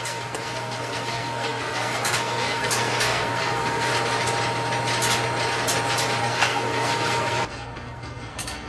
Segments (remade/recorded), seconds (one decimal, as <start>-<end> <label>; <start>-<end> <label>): 0.0-3.9 remade; 3.9-6.2 recorded; 6.2-8.7 remade